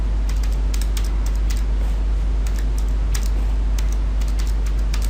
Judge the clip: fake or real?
real